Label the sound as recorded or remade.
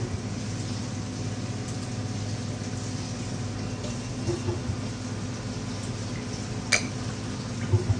recorded